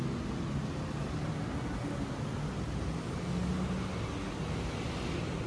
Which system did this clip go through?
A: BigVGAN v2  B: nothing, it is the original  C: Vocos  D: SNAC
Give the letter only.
B